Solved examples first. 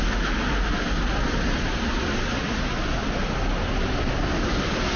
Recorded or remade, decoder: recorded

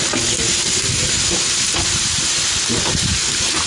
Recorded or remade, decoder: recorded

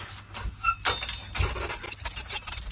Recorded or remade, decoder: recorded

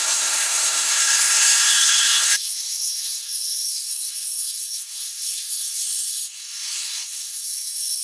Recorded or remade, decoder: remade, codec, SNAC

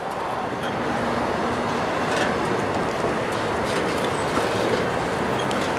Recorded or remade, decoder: recorded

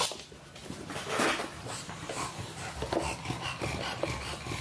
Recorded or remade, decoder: recorded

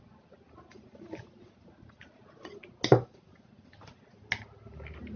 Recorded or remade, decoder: recorded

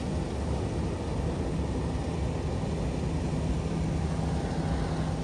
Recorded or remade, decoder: recorded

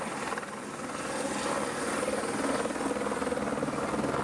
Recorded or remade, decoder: recorded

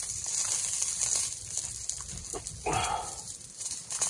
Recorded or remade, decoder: recorded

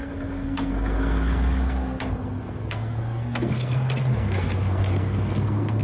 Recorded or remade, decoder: remade, codec, SNAC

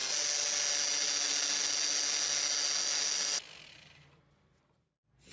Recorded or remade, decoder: recorded